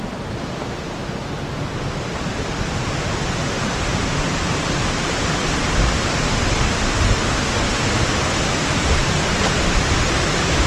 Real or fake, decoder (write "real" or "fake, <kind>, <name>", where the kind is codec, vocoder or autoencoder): real